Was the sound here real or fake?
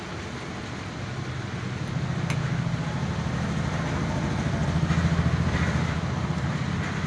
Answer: real